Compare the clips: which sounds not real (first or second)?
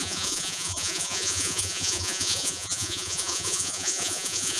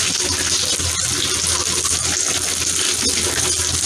first